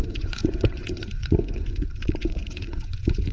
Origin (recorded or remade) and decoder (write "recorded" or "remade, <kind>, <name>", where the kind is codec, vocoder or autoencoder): remade, vocoder, Vocos